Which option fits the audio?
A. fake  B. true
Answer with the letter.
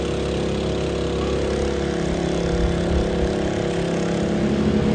B